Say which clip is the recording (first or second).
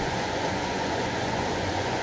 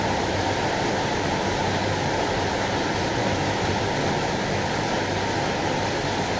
second